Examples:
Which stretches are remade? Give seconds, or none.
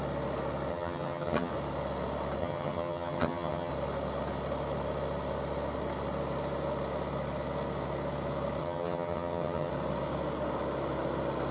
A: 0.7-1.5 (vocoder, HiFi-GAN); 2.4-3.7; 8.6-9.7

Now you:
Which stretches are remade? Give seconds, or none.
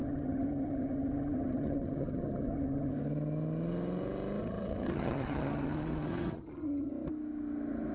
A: 0.0-2.9 (vocoder, HiFi-GAN); 4.4-6.9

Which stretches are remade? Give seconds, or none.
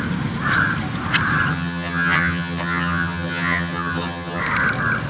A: 1.5-4.4 (vocoder, HiFi-GAN)